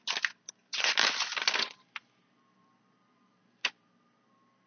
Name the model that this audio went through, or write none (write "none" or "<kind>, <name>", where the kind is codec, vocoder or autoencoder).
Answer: vocoder, BigVGAN v2